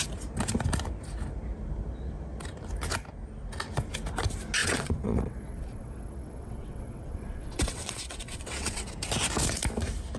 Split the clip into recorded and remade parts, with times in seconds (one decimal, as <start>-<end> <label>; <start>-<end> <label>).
0.0-4.6 recorded; 4.6-8.9 remade; 8.9-10.2 recorded